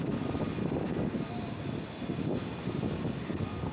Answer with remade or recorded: recorded